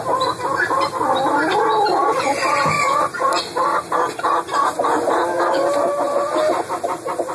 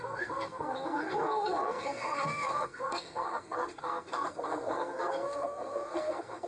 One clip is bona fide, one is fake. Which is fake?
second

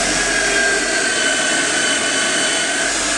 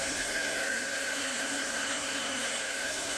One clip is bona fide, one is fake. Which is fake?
second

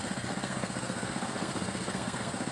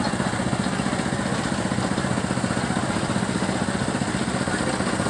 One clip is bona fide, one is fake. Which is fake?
first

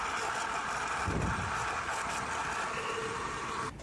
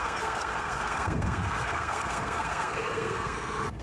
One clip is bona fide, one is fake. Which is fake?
second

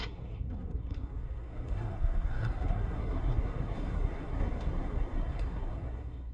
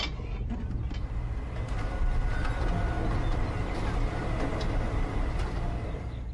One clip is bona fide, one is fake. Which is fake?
first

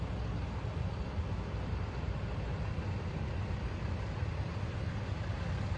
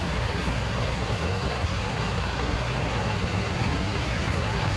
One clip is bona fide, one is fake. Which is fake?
second